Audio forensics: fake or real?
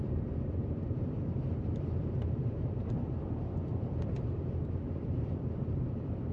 fake